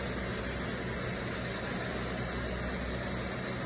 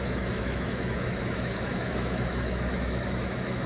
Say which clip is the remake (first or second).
second